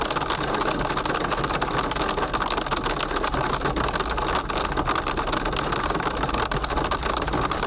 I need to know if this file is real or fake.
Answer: real